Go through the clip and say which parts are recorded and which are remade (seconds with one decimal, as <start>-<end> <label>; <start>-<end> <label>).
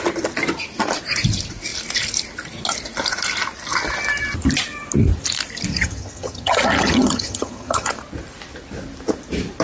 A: 0.0-5.7 recorded; 5.7-7.9 remade; 7.9-9.6 recorded